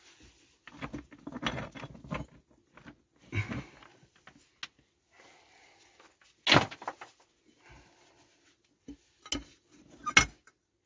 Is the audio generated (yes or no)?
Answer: no